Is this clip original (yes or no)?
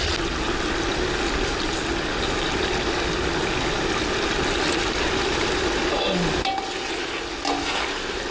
yes